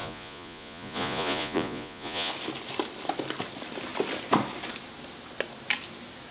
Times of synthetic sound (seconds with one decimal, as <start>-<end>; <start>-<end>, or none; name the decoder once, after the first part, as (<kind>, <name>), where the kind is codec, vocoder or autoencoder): 0.0-2.3 (vocoder, Vocos)